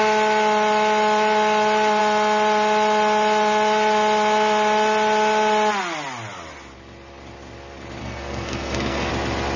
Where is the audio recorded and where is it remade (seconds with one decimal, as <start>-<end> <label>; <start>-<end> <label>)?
0.0-8.0 recorded; 8.0-9.1 remade; 9.1-9.6 recorded

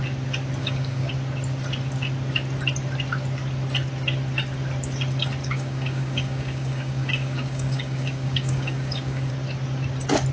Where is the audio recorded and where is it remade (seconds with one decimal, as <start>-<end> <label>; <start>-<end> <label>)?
0.0-0.6 recorded; 0.6-1.1 remade; 1.1-5.4 recorded; 5.4-9.3 remade; 9.3-10.3 recorded

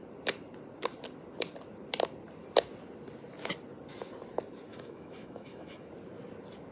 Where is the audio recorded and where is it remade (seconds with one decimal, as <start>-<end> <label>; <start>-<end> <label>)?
0.0-4.7 recorded; 4.7-5.9 remade; 5.9-6.7 recorded

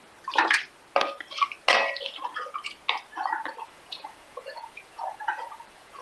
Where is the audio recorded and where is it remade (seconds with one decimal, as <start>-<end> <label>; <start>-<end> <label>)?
0.0-3.6 recorded; 3.6-6.0 remade